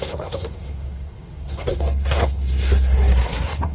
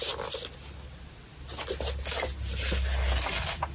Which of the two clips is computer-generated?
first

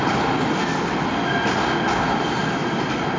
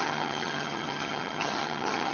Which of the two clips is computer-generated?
second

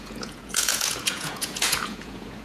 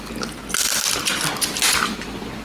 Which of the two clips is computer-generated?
first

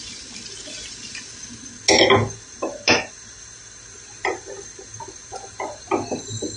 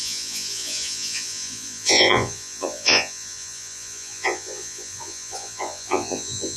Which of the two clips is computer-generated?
second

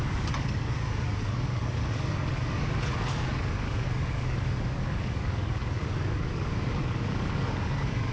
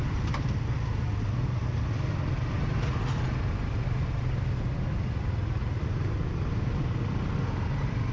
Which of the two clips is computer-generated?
first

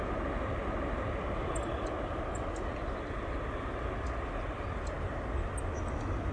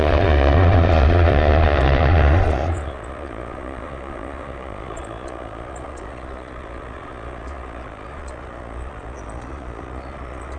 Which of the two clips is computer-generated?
second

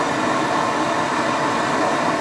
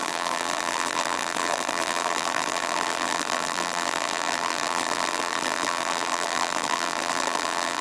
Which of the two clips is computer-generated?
second